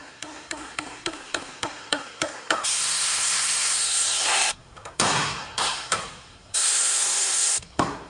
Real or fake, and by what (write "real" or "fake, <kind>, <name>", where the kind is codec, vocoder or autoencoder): fake, codec, SNAC